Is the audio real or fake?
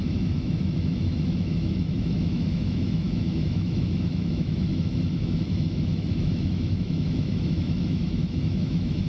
fake